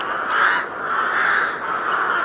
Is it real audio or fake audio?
real